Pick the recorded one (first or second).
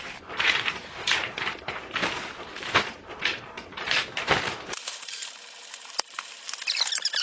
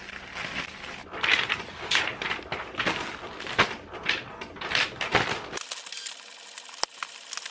second